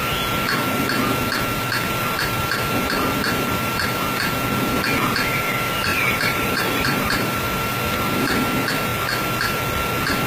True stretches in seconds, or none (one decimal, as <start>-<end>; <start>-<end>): 0.0-5.9; 7.5-10.3